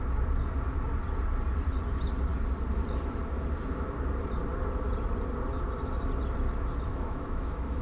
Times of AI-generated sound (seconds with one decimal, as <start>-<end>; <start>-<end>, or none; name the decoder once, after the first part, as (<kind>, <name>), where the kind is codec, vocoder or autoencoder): 6.9-7.8 (autoencoder, DAC-VAE)